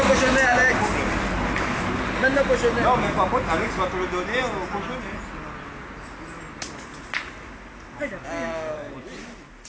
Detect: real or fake real